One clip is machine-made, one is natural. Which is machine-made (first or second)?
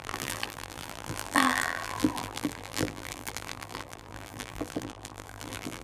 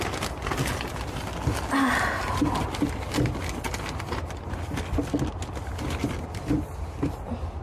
first